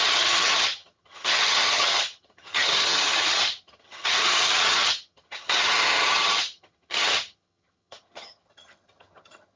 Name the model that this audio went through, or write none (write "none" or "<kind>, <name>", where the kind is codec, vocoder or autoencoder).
vocoder, HiFi-GAN